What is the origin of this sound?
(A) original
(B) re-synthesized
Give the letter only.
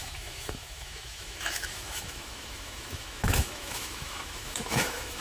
B